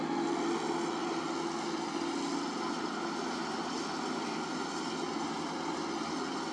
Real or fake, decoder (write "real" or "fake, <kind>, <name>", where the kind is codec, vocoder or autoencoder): real